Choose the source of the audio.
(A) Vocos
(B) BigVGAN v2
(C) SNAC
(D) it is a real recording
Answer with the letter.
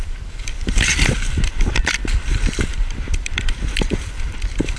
B